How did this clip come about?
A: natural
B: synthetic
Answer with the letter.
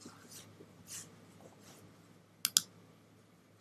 A